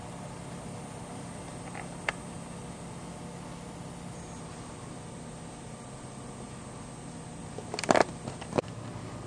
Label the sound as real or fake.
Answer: real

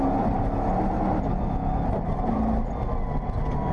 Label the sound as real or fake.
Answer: real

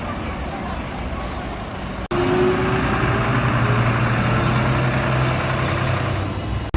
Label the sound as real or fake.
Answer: real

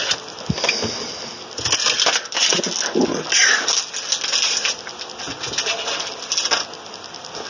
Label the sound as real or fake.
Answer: real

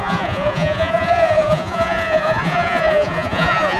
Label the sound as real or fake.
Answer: fake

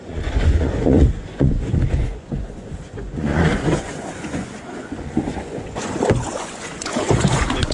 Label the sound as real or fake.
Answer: fake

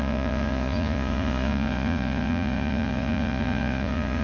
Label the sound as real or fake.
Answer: fake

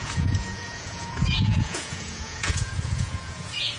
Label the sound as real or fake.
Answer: fake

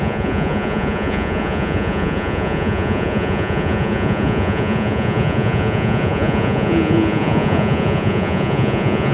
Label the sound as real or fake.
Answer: fake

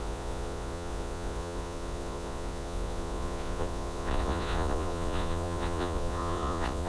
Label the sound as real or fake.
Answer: fake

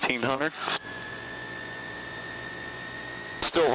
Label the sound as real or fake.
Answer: fake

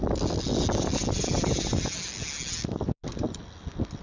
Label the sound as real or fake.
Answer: real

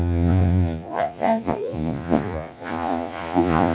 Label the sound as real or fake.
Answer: fake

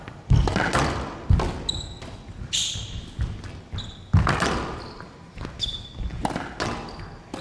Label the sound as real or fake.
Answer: real